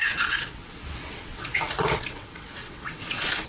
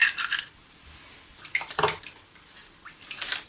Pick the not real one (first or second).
first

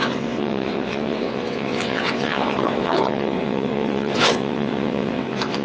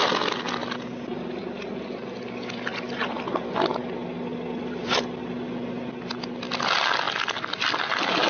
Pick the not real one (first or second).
first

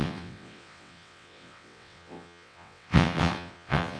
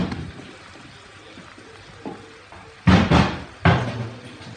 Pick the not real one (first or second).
first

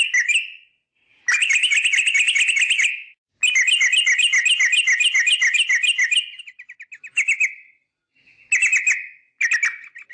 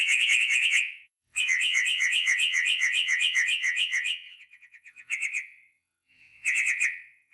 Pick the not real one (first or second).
second